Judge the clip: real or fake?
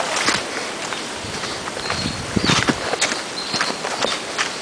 real